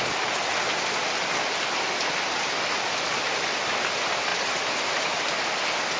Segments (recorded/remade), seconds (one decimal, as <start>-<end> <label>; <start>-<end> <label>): 0.0-6.0 recorded